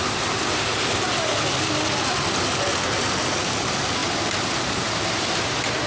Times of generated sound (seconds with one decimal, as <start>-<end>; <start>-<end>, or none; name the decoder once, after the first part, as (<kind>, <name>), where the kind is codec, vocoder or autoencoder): none